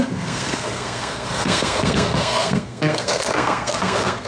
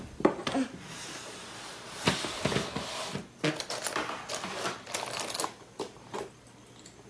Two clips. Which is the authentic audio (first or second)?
second